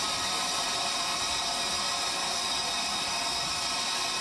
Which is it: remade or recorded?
recorded